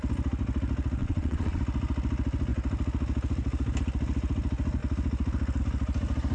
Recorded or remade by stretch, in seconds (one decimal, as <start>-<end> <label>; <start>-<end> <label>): 0.0-1.0 recorded; 1.0-1.6 remade; 1.6-6.3 recorded